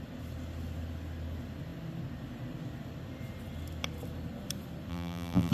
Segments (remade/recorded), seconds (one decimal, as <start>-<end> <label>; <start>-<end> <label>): 0.0-4.9 recorded; 4.9-5.5 remade